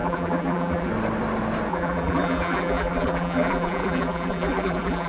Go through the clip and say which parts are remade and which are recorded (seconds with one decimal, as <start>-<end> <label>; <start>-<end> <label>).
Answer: 0.0-0.9 remade; 0.9-1.7 recorded; 1.7-5.1 remade